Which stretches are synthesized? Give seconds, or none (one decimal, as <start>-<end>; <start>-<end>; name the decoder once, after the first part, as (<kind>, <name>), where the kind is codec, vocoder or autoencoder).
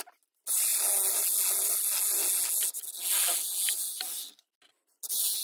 none